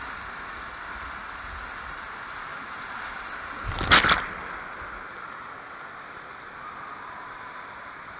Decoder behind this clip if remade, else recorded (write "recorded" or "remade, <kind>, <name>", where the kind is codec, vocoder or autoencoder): recorded